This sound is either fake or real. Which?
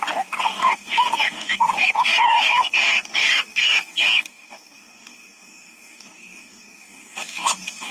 fake